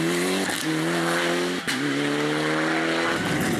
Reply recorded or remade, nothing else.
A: recorded